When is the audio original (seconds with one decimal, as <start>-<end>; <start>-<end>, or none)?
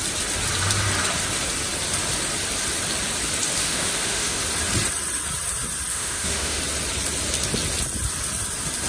0.0-3.6; 4.5-5.9; 6.6-8.9